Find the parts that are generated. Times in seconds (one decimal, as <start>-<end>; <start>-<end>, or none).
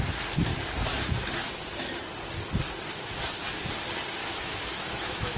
4.2-5.4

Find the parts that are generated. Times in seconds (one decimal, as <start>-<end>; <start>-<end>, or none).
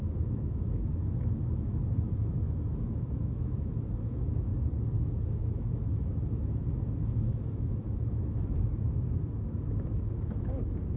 0.0-4.5; 5.1-11.0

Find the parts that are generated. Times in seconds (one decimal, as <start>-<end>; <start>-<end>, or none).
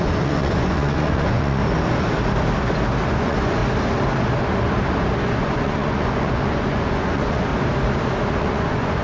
0.0-1.6; 3.2-3.6; 5.2-7.5; 8.4-9.0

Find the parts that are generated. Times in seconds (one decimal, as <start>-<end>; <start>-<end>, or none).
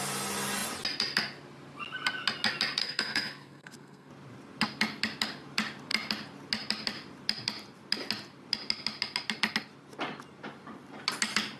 2.8-4.1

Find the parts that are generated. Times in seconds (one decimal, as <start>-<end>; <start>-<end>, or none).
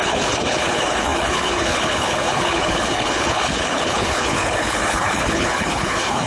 0.0-6.3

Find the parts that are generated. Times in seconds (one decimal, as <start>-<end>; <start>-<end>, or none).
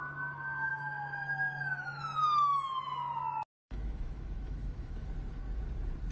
0.7-2.0; 3.5-5.1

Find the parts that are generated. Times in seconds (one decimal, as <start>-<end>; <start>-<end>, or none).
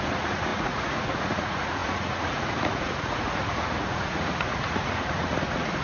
0.0-5.8